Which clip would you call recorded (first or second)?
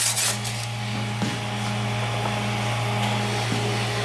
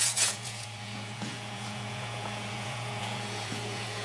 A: first